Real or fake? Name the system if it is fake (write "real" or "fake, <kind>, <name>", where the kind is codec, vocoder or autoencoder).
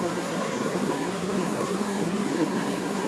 fake, codec, SNAC